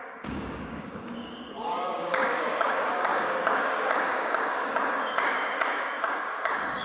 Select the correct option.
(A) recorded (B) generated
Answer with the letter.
B